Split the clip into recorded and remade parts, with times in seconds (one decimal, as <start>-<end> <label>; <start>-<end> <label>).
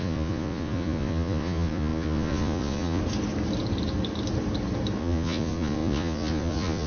0.0-3.0 remade; 3.0-5.0 recorded; 5.0-6.9 remade